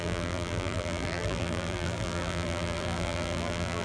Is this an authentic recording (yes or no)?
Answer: no